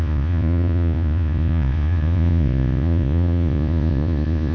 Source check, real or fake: fake